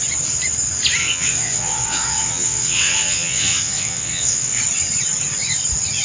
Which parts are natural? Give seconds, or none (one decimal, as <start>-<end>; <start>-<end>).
0.0-1.0; 4.6-6.0